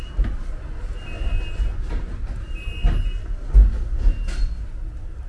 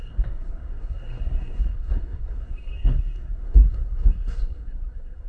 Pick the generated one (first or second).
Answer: second